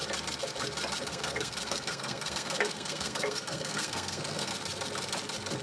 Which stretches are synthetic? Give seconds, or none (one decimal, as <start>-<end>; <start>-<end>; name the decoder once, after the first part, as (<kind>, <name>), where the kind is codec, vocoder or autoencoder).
1.1-4.5 (codec, SNAC)